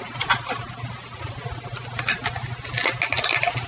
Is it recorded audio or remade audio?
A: recorded